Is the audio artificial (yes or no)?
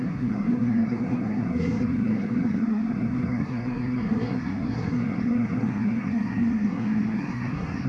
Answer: yes